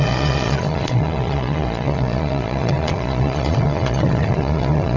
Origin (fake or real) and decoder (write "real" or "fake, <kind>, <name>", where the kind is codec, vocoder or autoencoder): fake, vocoder, Vocos